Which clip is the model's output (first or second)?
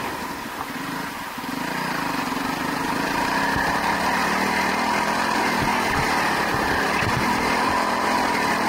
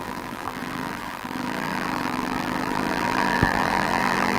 second